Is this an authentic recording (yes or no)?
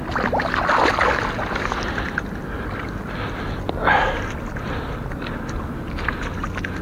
yes